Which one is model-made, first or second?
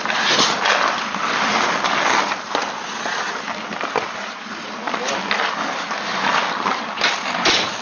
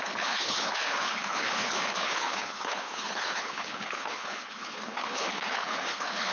second